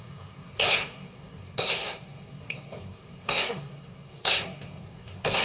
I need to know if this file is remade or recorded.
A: remade